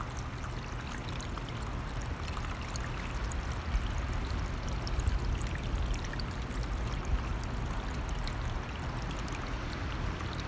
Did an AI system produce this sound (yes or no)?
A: no